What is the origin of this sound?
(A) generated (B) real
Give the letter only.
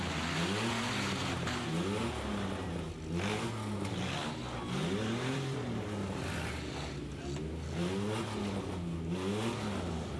B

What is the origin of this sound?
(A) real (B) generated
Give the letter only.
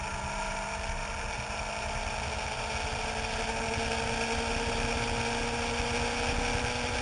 A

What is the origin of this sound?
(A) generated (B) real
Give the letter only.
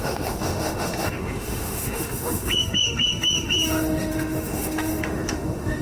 A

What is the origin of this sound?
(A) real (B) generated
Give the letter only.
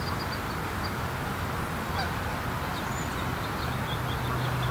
A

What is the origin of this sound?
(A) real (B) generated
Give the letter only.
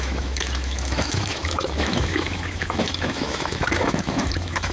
B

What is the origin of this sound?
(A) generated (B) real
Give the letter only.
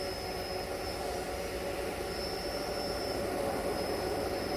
B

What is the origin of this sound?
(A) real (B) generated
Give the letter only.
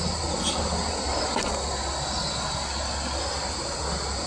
A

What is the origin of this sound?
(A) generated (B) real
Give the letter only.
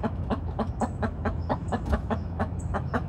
A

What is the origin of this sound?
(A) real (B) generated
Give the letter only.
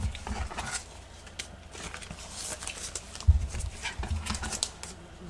A